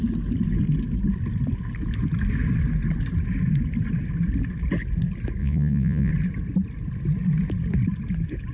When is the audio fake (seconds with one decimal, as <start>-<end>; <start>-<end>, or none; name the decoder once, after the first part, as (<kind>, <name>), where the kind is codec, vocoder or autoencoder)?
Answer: 5.4-6.1 (vocoder, Vocos)